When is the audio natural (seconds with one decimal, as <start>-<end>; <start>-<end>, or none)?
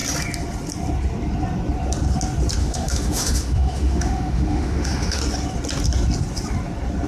0.0-2.6; 5.2-7.1